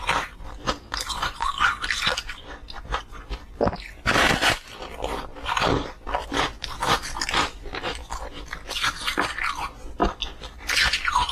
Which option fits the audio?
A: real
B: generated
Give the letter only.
A